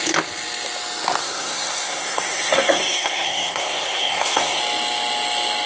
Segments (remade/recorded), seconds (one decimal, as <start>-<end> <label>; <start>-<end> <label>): 0.0-1.2 recorded; 1.2-4.6 remade; 4.6-5.7 recorded